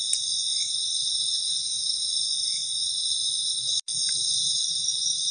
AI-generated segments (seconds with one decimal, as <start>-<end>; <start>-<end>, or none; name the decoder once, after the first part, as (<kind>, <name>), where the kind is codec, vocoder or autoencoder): 0.0-0.5 (vocoder, BigVGAN v2); 1.2-5.3